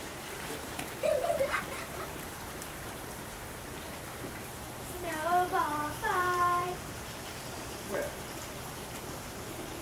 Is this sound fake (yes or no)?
yes